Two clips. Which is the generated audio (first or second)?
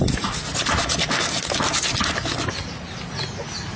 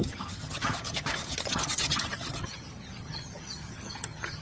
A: second